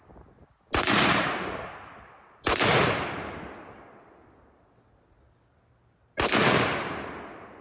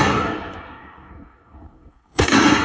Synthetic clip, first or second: second